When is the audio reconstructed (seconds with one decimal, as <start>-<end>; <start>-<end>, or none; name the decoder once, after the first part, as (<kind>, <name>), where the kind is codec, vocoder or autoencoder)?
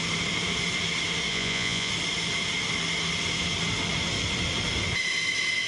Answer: 1.3-1.9 (vocoder, Vocos)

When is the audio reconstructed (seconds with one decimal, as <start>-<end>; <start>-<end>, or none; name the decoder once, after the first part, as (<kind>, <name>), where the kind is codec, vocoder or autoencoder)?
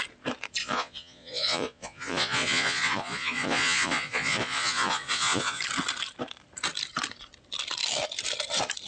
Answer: 0.6-5.6 (vocoder, Vocos)